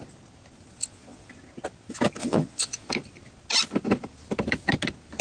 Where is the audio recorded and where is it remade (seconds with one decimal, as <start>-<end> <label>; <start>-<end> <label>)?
0.0-0.8 recorded; 0.8-1.3 remade; 1.3-2.2 recorded; 2.2-2.9 remade; 2.9-5.2 recorded